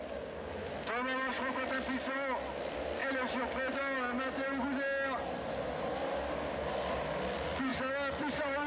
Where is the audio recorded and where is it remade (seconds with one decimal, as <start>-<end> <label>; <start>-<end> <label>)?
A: 0.0-8.7 recorded